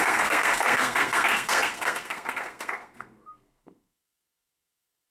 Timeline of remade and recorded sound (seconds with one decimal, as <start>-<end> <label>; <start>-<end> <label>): 0.0-5.1 remade